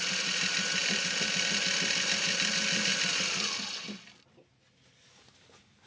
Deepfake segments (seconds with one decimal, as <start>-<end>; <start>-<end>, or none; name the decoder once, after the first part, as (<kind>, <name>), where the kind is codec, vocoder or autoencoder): none